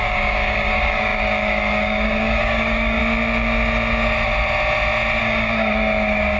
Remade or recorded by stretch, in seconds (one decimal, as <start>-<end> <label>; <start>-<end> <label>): 0.0-3.0 remade; 3.0-5.2 recorded; 5.2-6.4 remade